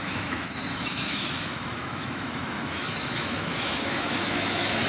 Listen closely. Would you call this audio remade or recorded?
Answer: remade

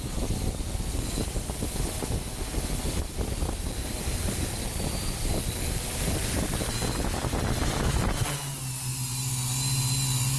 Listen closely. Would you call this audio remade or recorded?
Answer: recorded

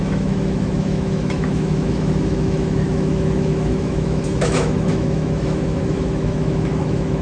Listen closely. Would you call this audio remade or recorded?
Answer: remade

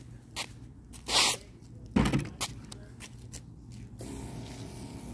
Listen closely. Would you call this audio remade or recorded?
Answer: recorded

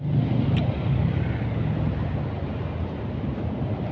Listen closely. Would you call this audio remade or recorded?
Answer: recorded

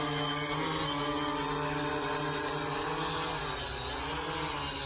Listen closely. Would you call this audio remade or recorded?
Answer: recorded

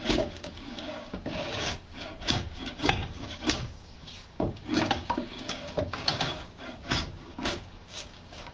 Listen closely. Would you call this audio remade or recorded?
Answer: remade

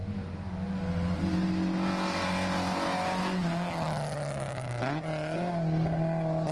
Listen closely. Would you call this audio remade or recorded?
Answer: recorded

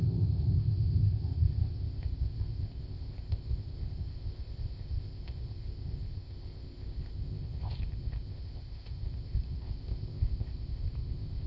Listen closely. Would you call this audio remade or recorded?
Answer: remade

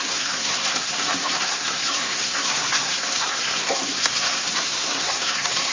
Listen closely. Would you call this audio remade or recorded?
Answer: remade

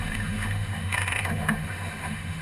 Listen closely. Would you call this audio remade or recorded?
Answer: remade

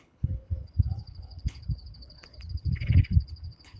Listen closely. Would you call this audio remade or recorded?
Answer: remade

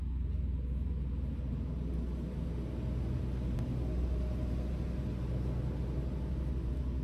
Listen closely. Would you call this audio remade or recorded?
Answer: recorded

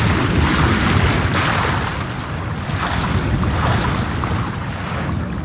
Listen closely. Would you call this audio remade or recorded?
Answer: recorded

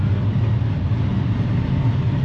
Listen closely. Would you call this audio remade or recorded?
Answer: recorded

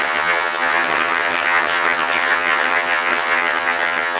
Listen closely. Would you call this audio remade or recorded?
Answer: remade